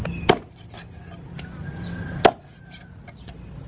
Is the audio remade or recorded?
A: recorded